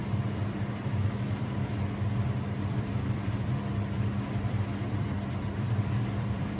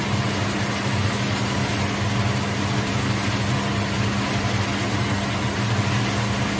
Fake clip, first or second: first